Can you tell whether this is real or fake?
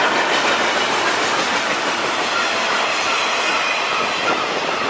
real